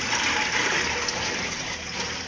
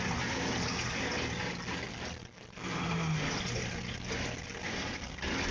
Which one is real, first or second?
second